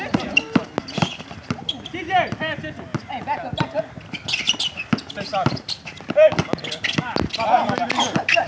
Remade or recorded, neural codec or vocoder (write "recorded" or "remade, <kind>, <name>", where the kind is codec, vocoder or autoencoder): recorded